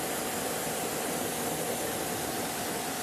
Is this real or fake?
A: real